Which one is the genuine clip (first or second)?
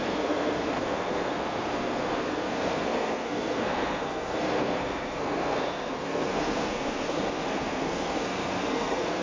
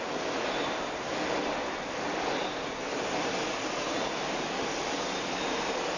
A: second